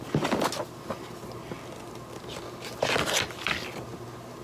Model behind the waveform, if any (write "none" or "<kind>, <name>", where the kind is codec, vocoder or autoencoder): none